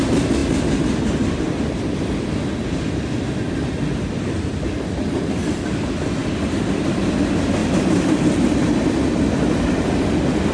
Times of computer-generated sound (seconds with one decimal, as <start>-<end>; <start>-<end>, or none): 7.6-8.7